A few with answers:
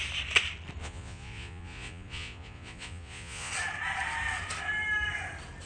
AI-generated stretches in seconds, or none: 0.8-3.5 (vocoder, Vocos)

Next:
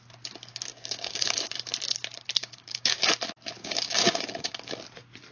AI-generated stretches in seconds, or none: 0.7-1.5 (codec, DAC); 2.4-3.1; 3.6-4.5

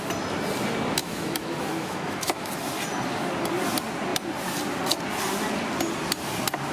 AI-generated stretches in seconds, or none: 1.0-2.5 (autoencoder, DAC-VAE)

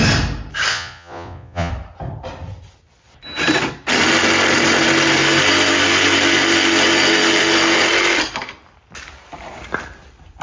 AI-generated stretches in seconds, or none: 0.7-1.7 (vocoder, Vocos)

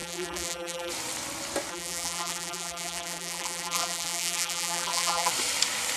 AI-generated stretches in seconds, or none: 0.0-0.9 (vocoder, BigVGAN v2); 1.7-5.3

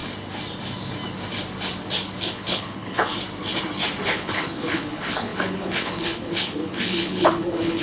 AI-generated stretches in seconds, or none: 2.3-3.1 (codec, HILCodec); 4.0-7.8

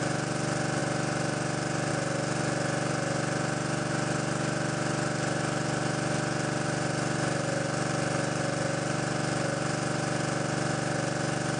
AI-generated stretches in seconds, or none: none

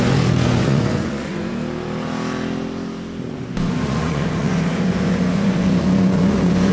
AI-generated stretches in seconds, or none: 0.0-1.5 (vocoder, Vocos); 3.3-6.7